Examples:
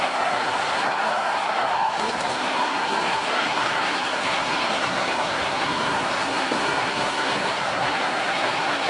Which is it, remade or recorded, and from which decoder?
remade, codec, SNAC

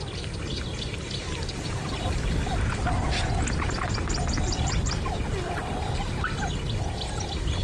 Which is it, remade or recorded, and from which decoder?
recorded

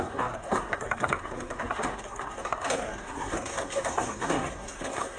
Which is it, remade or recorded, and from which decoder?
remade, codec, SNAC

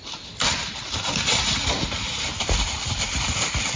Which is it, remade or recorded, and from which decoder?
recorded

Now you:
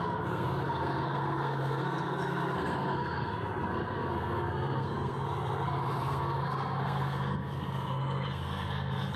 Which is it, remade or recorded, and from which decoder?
remade, codec, SNAC